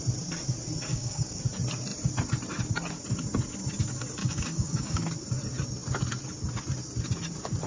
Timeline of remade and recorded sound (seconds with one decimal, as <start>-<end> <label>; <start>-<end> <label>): 0.0-0.9 recorded; 0.9-1.4 remade; 1.4-4.2 recorded; 4.2-5.0 remade; 5.0-7.7 recorded